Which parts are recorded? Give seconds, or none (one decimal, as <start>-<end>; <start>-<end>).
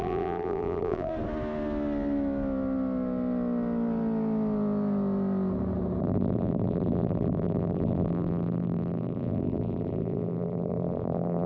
1.1-6.0